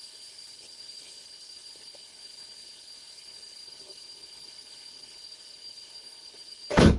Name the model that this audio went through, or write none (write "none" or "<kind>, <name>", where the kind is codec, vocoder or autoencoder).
codec, HILCodec